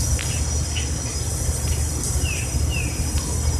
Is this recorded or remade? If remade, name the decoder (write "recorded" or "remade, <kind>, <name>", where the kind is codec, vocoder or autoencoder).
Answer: recorded